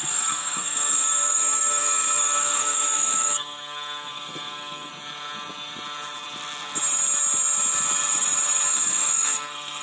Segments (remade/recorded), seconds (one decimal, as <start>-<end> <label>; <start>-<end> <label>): 0.0-4.9 remade; 4.9-8.7 recorded; 8.7-9.8 remade